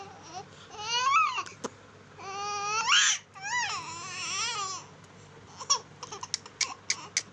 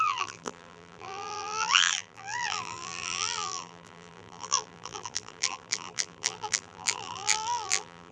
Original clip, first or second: first